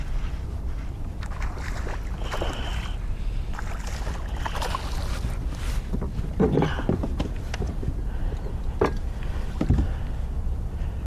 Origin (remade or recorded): recorded